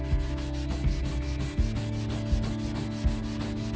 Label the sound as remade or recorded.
recorded